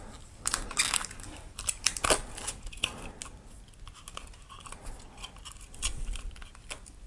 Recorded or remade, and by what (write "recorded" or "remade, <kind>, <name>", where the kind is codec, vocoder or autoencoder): recorded